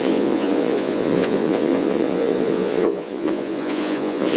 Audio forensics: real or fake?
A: fake